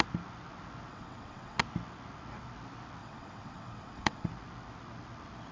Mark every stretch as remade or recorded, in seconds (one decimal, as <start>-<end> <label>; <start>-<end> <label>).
0.0-0.9 recorded; 0.9-1.6 remade; 1.6-3.0 recorded; 3.0-4.3 remade; 4.3-5.5 recorded